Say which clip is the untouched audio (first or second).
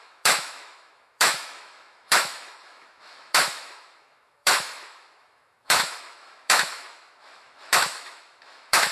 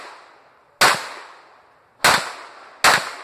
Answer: second